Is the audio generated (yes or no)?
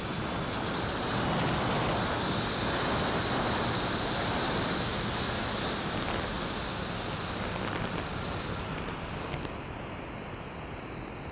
no